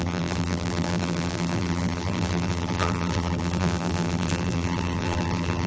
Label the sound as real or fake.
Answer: fake